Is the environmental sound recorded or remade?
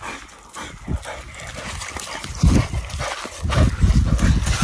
recorded